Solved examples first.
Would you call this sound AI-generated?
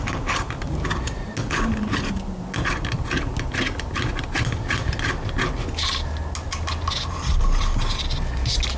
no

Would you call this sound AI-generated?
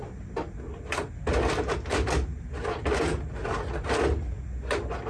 no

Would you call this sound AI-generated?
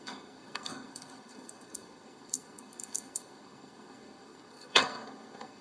yes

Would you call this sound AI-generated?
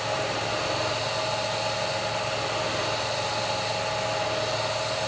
no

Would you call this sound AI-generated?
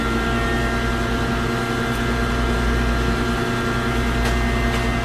no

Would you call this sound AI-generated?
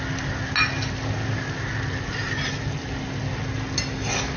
no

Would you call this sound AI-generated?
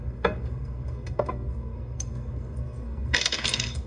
yes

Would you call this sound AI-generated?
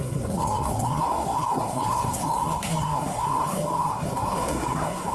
yes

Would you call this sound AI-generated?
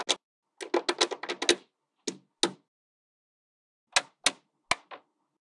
no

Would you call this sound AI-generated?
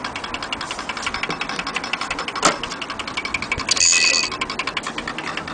no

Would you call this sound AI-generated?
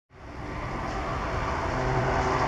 no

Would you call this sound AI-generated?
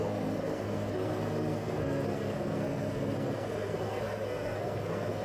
yes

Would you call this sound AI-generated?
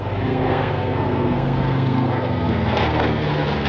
yes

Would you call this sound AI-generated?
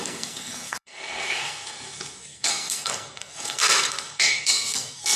yes